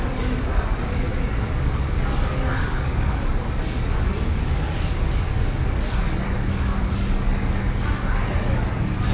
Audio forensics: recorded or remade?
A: remade